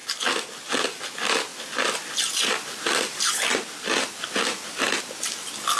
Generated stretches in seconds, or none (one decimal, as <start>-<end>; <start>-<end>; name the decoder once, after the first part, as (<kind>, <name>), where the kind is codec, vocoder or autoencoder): none